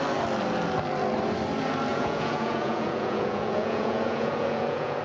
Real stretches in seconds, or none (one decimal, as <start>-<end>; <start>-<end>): 0.0-1.9